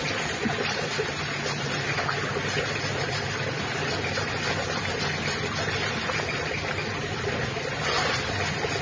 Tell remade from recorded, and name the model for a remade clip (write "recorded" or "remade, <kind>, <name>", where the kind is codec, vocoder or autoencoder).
recorded